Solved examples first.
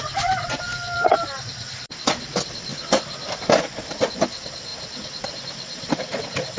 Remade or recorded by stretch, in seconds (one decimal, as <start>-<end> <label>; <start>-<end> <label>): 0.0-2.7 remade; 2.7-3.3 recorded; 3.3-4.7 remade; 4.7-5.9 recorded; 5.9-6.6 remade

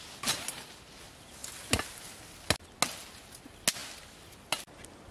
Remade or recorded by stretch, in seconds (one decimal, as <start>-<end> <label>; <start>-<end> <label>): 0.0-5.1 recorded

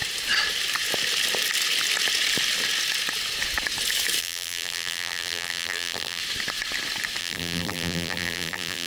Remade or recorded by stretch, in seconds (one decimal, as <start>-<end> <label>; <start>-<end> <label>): 0.0-4.2 recorded; 4.2-6.2 remade; 6.2-7.2 recorded; 7.2-8.9 remade

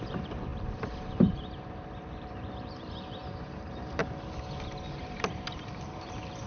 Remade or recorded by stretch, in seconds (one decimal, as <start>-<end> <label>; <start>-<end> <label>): 0.0-4.0 remade; 4.0-4.9 recorded; 4.9-6.5 remade